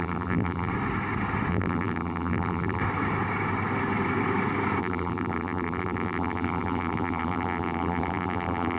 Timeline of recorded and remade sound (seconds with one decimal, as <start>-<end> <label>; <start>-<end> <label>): 0.0-0.7 remade; 0.7-1.5 recorded; 1.5-2.8 remade; 2.8-4.8 recorded; 4.8-8.8 remade